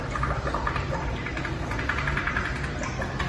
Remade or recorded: recorded